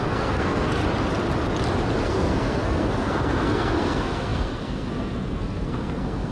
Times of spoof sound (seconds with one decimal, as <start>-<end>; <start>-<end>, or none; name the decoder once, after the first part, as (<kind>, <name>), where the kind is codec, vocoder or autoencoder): 0.0-0.8 (codec, SNAC); 2.0-6.3